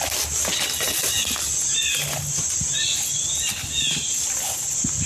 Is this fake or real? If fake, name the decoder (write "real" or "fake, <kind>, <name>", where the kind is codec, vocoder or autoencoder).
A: real